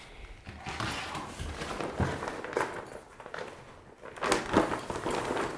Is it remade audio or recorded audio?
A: recorded